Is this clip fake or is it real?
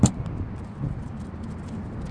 real